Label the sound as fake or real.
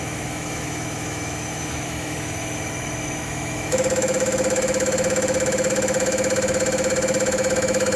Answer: fake